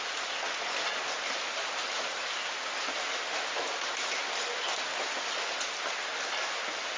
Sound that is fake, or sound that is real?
real